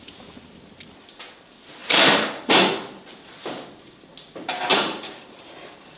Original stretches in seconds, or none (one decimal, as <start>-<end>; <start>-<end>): 0.0-1.8; 3.9-4.7